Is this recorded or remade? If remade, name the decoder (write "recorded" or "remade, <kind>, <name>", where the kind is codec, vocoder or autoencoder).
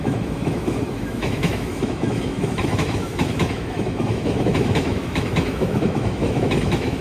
remade, autoencoder, DAC-VAE